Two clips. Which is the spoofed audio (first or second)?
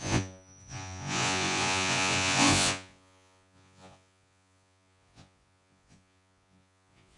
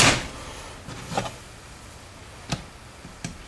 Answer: first